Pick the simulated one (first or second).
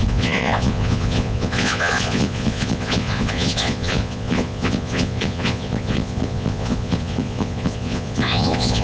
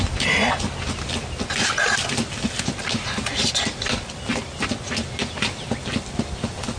first